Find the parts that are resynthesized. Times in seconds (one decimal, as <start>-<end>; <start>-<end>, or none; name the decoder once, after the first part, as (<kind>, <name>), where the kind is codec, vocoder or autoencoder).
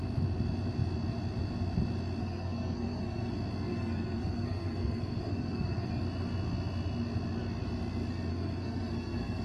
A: 2.2-3.3 (codec, SNAC); 3.7-5.9; 8.3-9.4